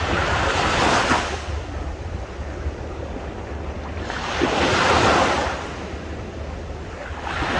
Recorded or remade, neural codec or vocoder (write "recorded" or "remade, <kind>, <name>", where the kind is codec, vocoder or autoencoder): recorded